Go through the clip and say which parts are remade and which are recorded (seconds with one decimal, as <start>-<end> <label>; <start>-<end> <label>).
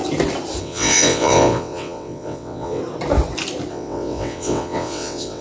0.0-0.6 recorded; 0.6-2.8 remade; 2.8-3.7 recorded; 3.7-5.4 remade